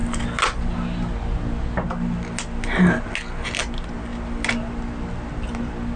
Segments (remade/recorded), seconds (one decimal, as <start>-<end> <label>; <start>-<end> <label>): 0.0-6.0 recorded